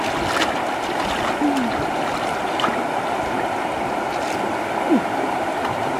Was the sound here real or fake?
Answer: real